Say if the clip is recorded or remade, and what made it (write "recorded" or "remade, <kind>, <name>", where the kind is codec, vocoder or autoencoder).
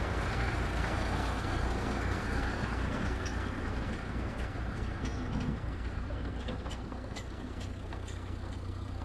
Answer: remade, codec, SNAC